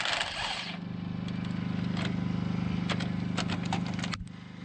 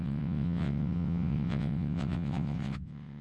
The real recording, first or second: first